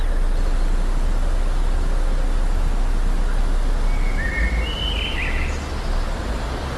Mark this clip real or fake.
real